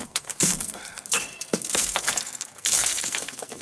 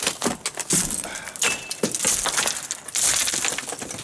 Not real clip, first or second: first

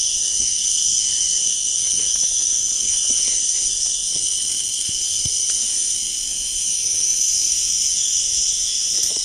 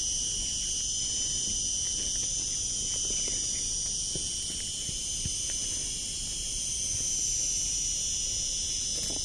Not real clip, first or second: first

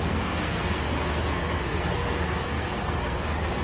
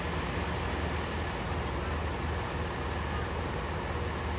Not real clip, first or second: first